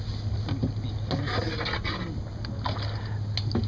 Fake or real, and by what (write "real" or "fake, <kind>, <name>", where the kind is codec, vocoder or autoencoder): real